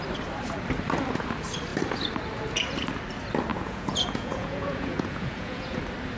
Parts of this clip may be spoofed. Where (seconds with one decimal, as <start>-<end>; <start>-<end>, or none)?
3.5-5.8